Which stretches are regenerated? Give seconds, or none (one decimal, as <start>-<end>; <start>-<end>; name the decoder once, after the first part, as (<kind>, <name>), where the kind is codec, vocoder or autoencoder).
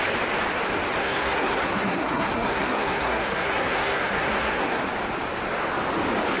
1.0-4.8 (codec, SNAC)